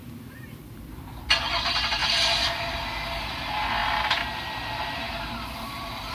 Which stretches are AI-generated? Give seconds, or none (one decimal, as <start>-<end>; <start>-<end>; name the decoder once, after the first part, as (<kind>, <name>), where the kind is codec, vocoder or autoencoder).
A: 0.0-1.2 (vocoder, BigVGAN v2); 2.0-2.7